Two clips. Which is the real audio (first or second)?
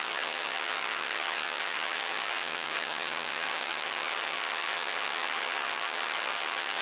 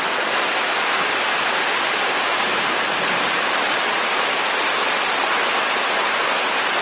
second